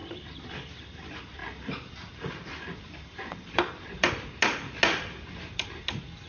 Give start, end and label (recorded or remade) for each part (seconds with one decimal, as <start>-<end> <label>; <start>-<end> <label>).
0.0-1.4 recorded; 1.4-4.1 remade; 4.1-6.3 recorded